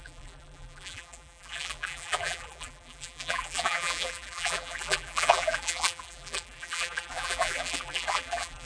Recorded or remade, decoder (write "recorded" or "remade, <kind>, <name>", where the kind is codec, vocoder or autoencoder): remade, vocoder, BigVGAN v2